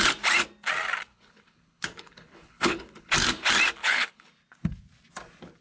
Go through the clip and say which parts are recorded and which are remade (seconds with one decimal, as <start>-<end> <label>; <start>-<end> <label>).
0.0-1.1 recorded; 1.1-3.1 remade; 3.1-3.8 recorded; 3.8-4.3 remade; 4.3-5.6 recorded